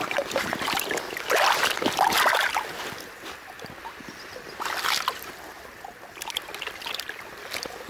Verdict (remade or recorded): remade